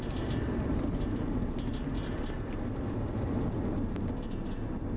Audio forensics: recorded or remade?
recorded